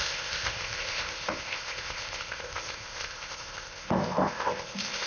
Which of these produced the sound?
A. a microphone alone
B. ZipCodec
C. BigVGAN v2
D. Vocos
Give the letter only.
B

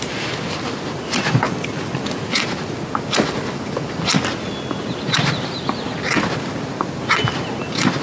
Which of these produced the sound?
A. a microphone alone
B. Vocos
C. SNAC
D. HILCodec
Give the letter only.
A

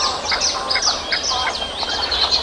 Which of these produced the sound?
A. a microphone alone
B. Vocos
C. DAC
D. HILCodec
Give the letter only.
A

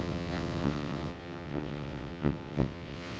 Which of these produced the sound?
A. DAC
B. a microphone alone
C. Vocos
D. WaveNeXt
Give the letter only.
D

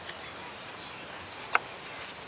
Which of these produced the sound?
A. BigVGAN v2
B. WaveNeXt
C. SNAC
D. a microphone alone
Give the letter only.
D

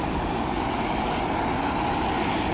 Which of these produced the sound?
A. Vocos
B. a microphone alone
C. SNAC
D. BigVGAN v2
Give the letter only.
B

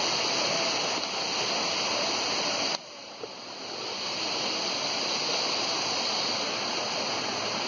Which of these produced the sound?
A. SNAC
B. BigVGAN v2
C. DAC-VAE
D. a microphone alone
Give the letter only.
D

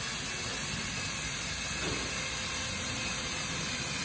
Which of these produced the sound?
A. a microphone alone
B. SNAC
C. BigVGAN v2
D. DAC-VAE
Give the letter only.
A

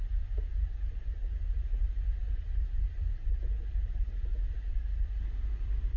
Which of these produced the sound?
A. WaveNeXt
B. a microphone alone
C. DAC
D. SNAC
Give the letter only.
B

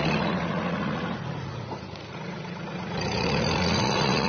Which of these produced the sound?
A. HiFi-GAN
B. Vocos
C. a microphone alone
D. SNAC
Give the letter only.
B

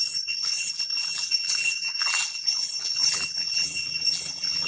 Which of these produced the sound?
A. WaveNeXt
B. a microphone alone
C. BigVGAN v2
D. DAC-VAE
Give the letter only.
C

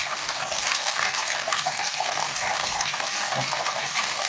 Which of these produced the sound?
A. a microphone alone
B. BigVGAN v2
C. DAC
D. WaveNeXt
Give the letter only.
C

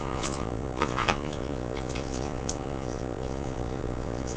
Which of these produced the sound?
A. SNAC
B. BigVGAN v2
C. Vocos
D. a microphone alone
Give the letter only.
C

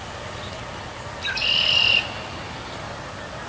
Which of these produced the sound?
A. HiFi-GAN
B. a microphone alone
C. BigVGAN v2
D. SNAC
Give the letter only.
B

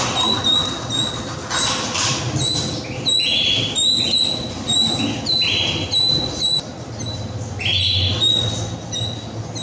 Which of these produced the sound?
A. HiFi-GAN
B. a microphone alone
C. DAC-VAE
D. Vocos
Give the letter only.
B